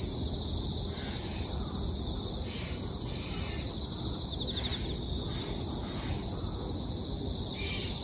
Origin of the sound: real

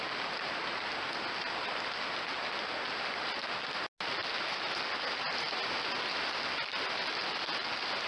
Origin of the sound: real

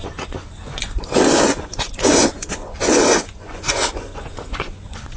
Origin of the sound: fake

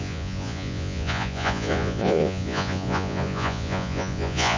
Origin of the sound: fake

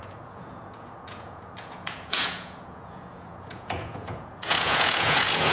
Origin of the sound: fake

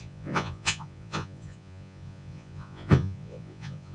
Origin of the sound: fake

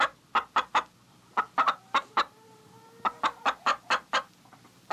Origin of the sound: real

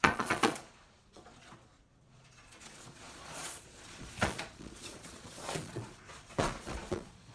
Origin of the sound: fake